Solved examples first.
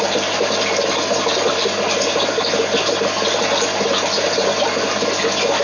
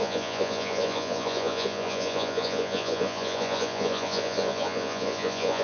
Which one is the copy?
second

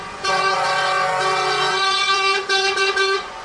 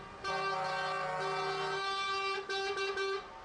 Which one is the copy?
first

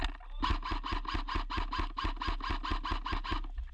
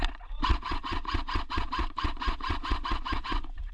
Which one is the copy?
second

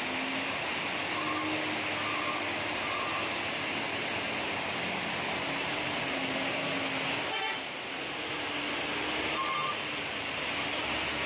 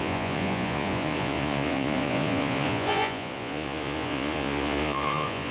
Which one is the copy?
second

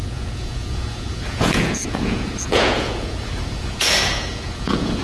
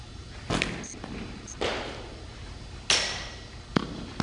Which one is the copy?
first